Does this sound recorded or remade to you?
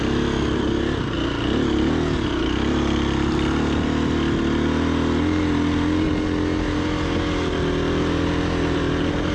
recorded